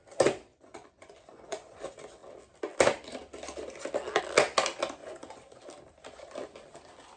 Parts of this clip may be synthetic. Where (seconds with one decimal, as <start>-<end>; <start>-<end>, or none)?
0.5-1.8; 5.0-5.6